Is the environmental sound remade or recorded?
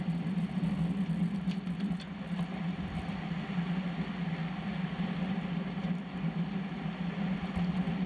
recorded